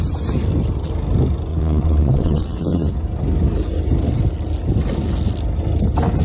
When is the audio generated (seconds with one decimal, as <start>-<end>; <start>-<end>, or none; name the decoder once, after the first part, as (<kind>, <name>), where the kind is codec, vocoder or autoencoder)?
1.5-2.9 (vocoder, WaveNeXt)